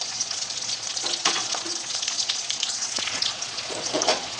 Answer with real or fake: fake